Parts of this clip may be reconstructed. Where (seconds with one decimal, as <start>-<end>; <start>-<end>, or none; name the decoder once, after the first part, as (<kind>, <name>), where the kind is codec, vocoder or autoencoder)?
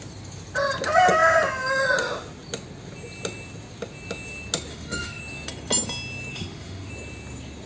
4.7-5.2 (autoencoder, DAC-VAE); 6.3-6.9